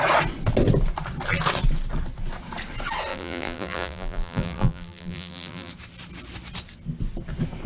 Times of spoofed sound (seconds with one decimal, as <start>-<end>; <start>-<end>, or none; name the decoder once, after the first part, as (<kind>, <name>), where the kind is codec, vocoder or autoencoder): 3.1-5.7 (vocoder, BigVGAN v2)